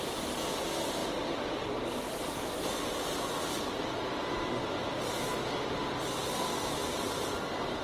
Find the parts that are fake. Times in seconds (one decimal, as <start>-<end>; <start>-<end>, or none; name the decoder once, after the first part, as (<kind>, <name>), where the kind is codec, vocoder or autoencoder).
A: none